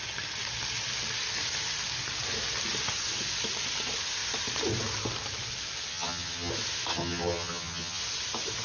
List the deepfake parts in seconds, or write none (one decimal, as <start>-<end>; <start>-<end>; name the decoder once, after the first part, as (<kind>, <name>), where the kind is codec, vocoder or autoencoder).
5.9-6.5 (vocoder, HiFi-GAN); 6.9-8.0